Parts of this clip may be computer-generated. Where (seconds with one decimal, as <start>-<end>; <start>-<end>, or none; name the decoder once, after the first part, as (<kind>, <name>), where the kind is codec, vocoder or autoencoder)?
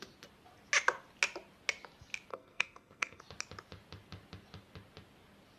2.3-3.2 (codec, SNAC)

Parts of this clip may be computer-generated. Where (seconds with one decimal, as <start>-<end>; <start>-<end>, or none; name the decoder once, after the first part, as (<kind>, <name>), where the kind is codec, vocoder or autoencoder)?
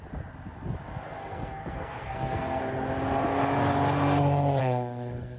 1.2-2.6 (codec, SNAC); 4.6-5.4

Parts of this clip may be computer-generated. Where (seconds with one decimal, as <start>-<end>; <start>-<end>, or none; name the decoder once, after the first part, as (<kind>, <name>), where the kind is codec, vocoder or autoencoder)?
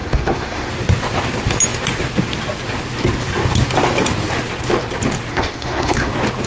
0.0-0.7 (codec, SNAC); 5.3-6.1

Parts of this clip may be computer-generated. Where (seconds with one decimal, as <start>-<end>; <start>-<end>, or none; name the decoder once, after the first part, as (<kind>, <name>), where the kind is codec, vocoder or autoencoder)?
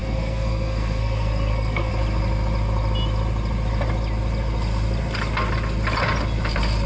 0.0-1.9 (codec, SNAC)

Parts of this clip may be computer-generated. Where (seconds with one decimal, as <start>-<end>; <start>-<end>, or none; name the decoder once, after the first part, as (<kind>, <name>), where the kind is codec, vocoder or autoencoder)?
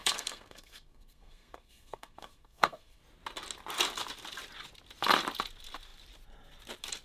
0.0-3.0 (codec, SNAC)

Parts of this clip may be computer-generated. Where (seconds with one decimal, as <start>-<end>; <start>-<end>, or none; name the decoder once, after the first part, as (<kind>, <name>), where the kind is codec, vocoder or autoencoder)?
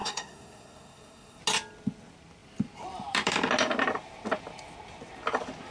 0.0-1.4 (codec, SNAC)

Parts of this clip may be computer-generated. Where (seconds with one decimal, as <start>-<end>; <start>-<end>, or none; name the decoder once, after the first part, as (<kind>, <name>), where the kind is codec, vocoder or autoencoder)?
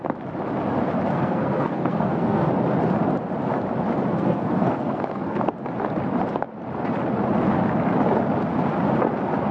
1.1-2.5 (codec, SNAC); 4.1-5.4